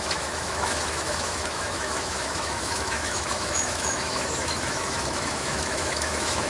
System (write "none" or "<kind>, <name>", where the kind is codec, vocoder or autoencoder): autoencoder, DAC-VAE